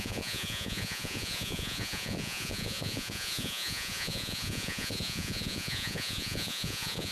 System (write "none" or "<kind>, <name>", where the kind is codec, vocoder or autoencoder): vocoder, Vocos